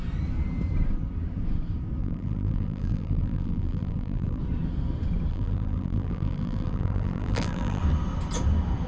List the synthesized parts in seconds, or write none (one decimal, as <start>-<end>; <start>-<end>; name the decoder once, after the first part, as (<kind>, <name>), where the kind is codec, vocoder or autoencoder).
2.0-4.4 (vocoder, BigVGAN v2); 5.3-7.8